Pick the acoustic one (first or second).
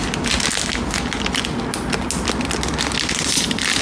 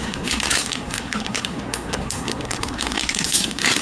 first